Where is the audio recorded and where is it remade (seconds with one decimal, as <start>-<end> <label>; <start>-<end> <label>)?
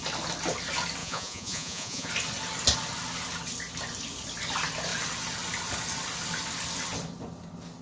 0.0-1.0 recorded; 1.0-2.1 remade; 2.1-7.8 recorded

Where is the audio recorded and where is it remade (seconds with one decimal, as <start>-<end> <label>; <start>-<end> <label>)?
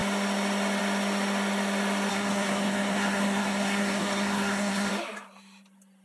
0.0-2.1 recorded; 2.1-4.9 remade; 4.9-6.0 recorded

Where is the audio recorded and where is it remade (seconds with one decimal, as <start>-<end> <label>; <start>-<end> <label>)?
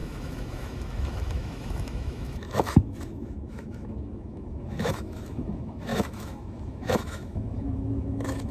0.0-8.5 remade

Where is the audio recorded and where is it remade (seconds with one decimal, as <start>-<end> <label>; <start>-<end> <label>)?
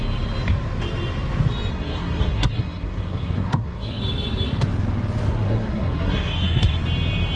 0.0-1.7 recorded; 1.7-4.0 remade; 4.0-5.3 recorded; 5.3-6.8 remade; 6.8-7.4 recorded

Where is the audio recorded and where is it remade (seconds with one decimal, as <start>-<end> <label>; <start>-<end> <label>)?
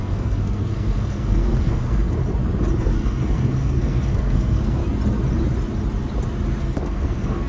0.0-2.2 remade; 2.2-2.8 recorded; 2.8-4.8 remade; 4.8-6.6 recorded; 6.6-7.5 remade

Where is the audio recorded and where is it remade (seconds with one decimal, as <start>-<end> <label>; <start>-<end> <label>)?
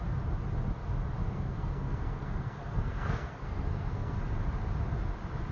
0.0-1.2 recorded; 1.2-4.2 remade; 4.2-5.5 recorded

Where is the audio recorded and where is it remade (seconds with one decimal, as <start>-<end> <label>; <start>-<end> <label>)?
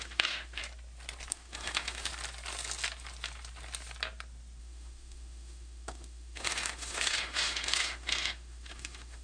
0.0-0.6 remade; 0.6-1.3 recorded; 1.3-2.1 remade; 2.1-4.6 recorded; 4.6-9.2 remade